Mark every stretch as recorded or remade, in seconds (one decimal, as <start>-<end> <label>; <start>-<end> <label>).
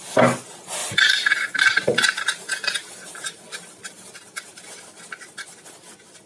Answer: 0.0-0.8 recorded; 0.8-4.6 remade; 4.6-6.3 recorded